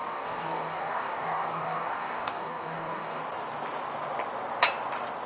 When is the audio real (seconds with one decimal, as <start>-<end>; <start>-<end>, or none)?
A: 3.2-5.3